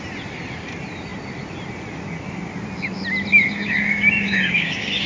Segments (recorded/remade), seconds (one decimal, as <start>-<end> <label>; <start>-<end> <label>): 0.0-3.3 recorded; 3.3-5.1 remade